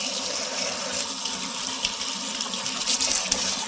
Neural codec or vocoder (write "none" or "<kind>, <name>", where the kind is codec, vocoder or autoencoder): none